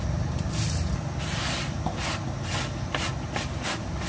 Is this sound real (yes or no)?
yes